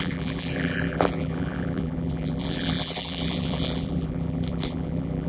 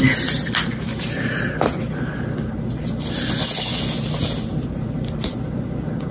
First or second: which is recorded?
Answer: second